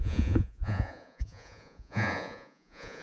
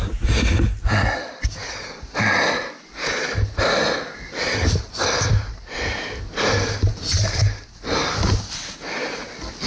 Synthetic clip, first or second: first